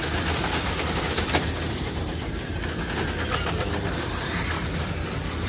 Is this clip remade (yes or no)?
no